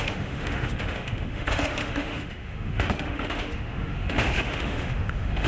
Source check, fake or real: fake